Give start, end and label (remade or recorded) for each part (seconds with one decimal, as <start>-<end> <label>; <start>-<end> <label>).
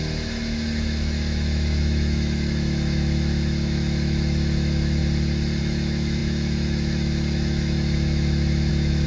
0.0-5.0 remade; 5.0-5.6 recorded; 5.6-9.1 remade